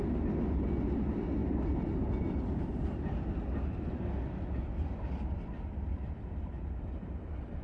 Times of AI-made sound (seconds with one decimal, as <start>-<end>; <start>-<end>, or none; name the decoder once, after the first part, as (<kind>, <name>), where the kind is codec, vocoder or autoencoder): none